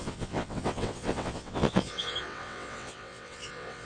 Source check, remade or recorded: remade